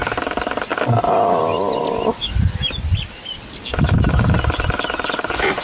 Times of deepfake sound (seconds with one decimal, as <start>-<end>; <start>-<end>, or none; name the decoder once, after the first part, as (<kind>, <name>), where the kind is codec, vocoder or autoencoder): none